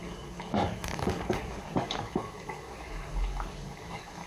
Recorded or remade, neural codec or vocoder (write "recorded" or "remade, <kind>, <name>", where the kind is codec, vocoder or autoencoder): remade, codec, DAC